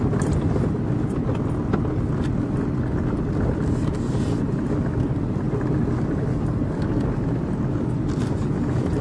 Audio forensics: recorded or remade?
recorded